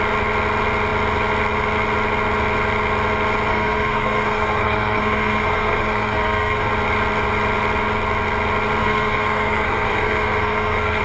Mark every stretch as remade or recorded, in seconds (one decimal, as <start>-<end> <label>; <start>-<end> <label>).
0.0-3.5 recorded; 3.5-6.7 remade; 6.7-8.8 recorded; 8.8-11.0 remade